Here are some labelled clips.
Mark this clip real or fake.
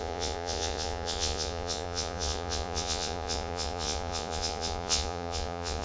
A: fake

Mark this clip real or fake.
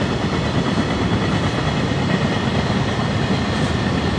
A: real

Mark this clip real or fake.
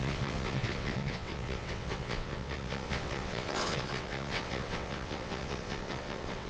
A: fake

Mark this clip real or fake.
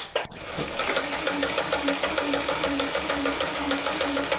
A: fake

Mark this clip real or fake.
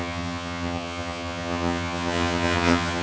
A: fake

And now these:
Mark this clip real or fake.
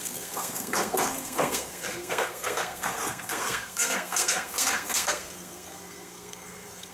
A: fake